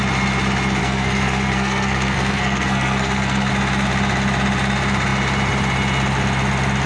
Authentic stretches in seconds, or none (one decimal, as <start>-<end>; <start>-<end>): 0.0-0.8; 3.5-6.9